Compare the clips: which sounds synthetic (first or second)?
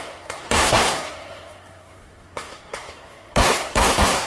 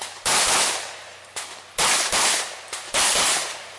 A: first